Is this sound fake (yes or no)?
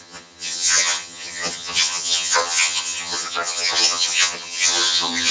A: yes